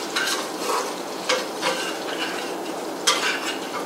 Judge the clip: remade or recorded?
recorded